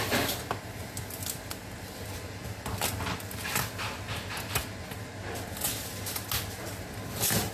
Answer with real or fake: real